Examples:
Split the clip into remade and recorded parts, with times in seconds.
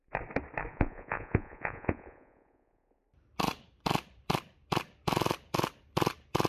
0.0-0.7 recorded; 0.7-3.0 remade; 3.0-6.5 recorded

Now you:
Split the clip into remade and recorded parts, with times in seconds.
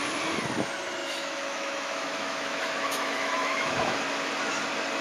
0.0-1.0 recorded; 1.0-4.0 remade; 4.0-5.0 recorded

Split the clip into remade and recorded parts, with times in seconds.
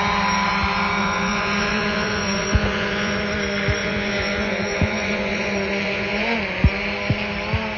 0.0-1.0 recorded; 1.0-3.2 remade; 3.2-3.8 recorded; 3.8-6.4 remade; 6.4-7.8 recorded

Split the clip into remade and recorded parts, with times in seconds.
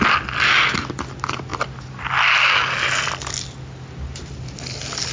0.0-5.1 recorded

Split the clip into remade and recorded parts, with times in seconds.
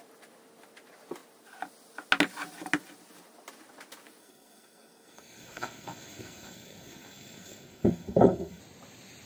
0.0-4.2 recorded; 4.2-8.6 remade; 8.6-9.3 recorded